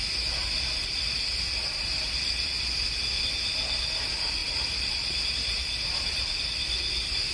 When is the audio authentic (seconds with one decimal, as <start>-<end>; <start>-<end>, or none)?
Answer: 0.0-4.4; 6.4-7.3